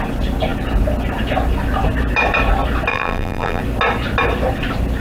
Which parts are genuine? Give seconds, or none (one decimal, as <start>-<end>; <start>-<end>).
0.0-2.9; 3.6-5.0

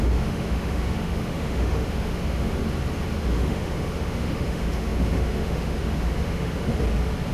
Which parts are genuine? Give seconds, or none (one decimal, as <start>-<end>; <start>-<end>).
2.6-3.1; 6.7-7.3

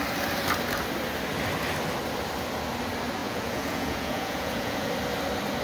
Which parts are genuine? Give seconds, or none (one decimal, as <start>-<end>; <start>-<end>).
0.0-3.2; 4.9-5.6